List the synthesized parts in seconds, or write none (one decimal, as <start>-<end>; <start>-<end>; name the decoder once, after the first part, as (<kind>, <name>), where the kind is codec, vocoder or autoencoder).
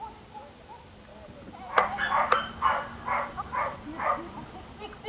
none